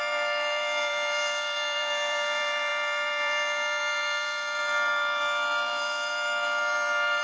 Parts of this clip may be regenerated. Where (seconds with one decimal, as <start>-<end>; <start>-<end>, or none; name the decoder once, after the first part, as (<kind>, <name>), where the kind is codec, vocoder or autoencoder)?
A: 0.0-7.2 (vocoder, BigVGAN v2)